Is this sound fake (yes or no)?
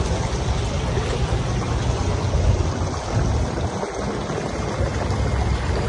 no